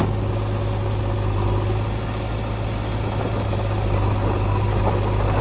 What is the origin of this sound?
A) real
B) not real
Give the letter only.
A